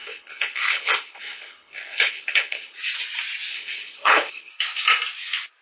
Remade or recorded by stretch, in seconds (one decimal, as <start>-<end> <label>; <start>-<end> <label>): 0.0-2.8 remade; 2.8-3.5 recorded; 3.5-4.5 remade; 4.5-5.6 recorded